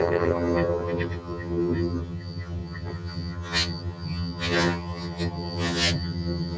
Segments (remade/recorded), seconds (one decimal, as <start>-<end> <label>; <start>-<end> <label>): 0.0-6.6 remade

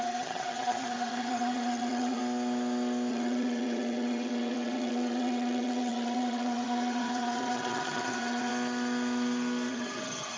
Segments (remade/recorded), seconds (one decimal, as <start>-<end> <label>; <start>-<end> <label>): 0.0-2.2 remade; 2.2-3.1 recorded; 3.1-8.5 remade; 8.5-9.7 recorded; 9.7-10.4 remade